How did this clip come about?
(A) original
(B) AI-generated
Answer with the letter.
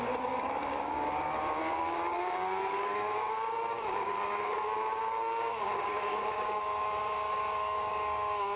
B